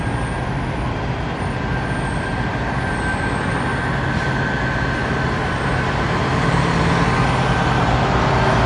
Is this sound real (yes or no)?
yes